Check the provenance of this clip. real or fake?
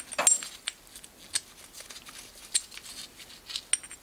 real